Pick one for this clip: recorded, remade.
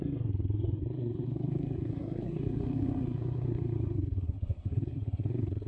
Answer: remade